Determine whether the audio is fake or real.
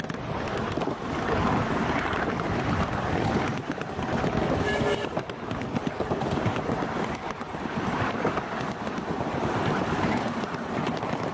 real